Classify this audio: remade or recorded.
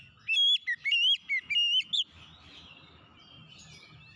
recorded